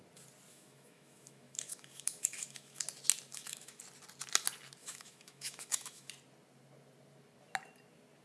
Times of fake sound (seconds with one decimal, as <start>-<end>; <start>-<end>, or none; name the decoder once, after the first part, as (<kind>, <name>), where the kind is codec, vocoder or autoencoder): 0.5-2.8 (autoencoder, DAC-VAE); 3.3-3.8; 4.8-6.1